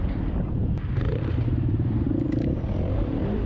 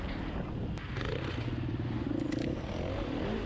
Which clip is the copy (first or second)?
first